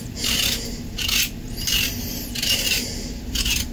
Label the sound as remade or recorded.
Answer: recorded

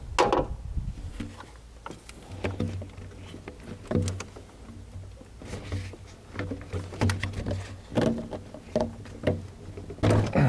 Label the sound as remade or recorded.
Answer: recorded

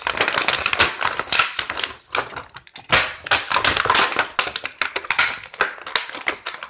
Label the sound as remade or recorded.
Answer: recorded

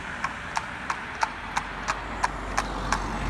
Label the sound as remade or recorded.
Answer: recorded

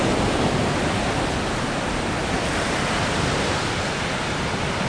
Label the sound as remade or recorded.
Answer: recorded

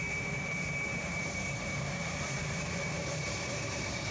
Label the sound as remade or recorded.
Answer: remade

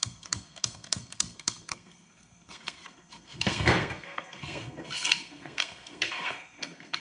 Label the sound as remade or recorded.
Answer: remade